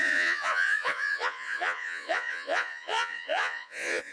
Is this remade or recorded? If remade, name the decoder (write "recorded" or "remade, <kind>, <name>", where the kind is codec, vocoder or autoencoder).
remade, vocoder, Vocos